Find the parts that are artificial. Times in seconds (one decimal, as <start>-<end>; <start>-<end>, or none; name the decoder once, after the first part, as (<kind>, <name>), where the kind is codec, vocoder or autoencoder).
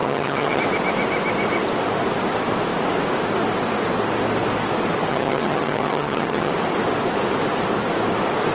0.0-0.6 (vocoder, HiFi-GAN); 5.1-6.5